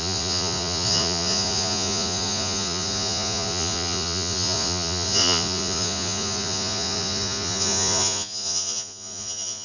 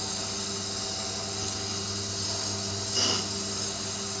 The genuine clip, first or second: second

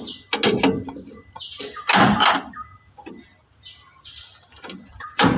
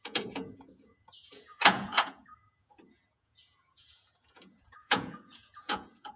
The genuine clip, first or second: first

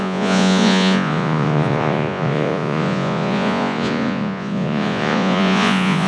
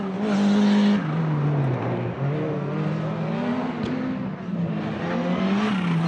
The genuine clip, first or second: second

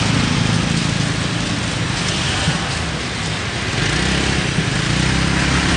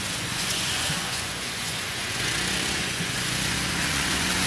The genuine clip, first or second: first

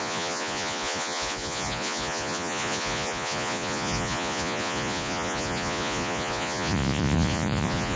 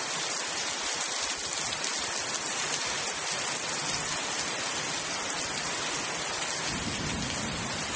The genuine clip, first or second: second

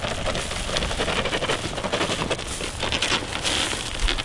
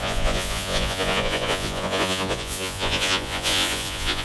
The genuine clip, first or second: first